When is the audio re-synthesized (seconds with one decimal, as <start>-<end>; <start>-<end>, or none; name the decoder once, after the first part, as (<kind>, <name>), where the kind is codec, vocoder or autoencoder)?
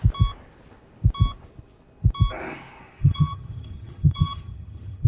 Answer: 3.0-5.1 (vocoder, HiFi-GAN)